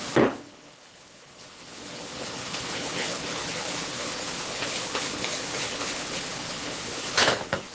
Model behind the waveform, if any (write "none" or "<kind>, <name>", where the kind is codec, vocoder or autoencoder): codec, HILCodec